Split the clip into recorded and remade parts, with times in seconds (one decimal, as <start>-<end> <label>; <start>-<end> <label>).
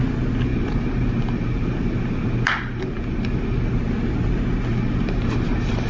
0.0-0.5 recorded; 0.5-3.7 remade; 3.7-4.7 recorded; 4.7-5.9 remade